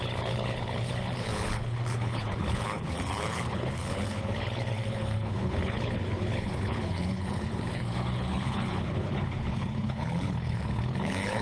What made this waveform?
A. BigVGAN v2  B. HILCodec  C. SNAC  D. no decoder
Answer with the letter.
B